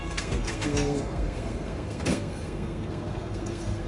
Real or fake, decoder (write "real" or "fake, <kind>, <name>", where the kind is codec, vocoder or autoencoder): fake, codec, SNAC